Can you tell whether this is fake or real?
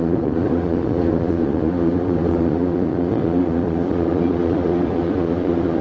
fake